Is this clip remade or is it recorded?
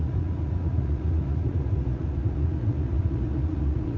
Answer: remade